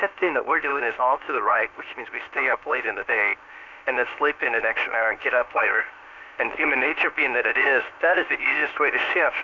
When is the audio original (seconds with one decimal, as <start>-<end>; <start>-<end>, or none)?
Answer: none